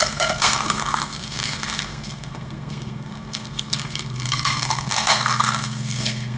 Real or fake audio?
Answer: fake